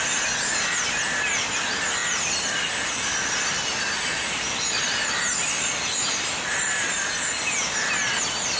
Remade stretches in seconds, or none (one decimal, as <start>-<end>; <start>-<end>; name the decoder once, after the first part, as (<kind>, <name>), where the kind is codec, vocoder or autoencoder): none